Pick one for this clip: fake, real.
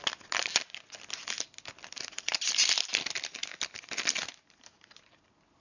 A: real